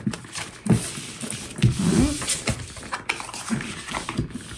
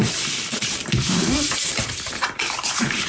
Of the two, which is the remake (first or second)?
second